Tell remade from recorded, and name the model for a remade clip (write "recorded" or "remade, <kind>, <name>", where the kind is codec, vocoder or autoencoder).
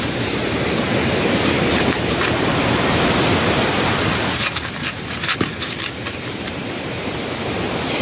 remade, vocoder, BigVGAN v2